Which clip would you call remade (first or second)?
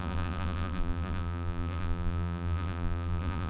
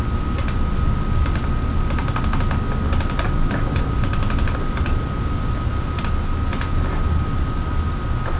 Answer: first